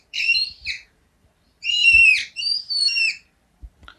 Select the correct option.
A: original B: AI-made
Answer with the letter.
B